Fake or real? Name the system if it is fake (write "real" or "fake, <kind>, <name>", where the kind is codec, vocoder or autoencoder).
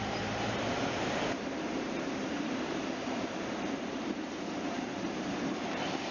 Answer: fake, vocoder, BigVGAN v2